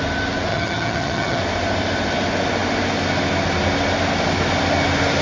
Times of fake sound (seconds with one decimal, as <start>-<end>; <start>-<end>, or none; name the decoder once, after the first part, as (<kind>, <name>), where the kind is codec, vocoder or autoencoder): 0.5-1.4 (vocoder, HiFi-GAN)